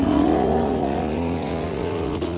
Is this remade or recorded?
remade